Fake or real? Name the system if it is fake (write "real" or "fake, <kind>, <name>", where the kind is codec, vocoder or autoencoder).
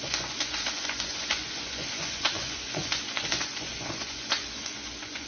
fake, vocoder, Vocos